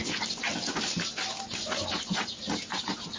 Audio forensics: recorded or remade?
recorded